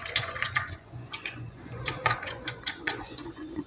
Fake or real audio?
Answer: fake